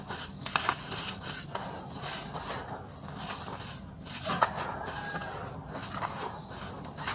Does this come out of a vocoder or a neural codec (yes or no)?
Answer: no